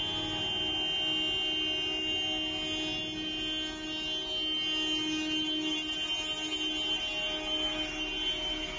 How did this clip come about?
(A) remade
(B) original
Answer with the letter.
B